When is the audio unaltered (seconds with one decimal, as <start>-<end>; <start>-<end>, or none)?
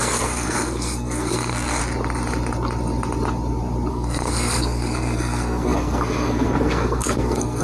1.8-3.9